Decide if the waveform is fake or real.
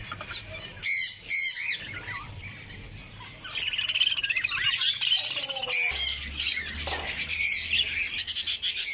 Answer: real